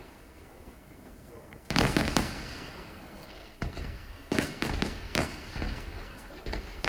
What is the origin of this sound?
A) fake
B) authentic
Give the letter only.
A